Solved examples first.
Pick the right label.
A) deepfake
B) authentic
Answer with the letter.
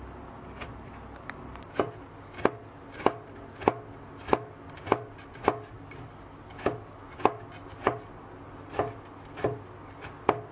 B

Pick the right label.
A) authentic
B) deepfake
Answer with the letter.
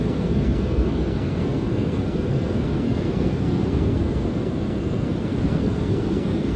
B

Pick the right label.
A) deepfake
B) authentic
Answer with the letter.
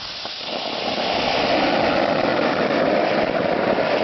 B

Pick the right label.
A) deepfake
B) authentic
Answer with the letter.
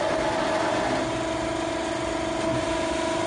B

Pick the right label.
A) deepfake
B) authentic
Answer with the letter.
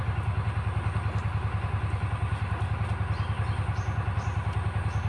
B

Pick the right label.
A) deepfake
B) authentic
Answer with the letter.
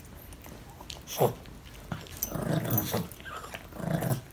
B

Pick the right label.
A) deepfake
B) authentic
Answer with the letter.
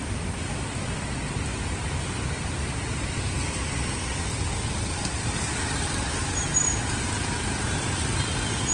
B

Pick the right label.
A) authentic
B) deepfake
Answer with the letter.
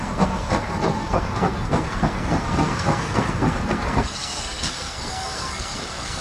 B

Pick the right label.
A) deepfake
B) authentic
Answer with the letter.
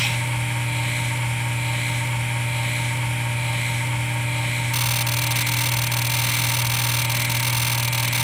B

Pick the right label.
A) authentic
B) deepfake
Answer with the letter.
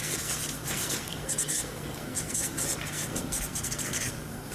B